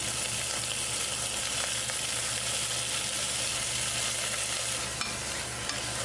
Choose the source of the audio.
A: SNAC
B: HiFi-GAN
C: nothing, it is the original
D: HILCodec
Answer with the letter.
C